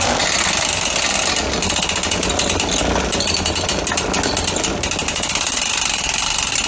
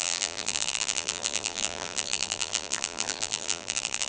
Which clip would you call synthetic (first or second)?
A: second